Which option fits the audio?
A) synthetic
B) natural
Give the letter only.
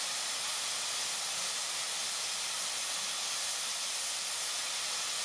B